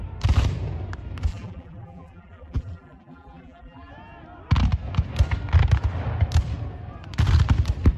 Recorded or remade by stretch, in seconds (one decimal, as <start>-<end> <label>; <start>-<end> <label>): 0.0-1.3 recorded; 1.3-3.9 remade; 3.9-8.0 recorded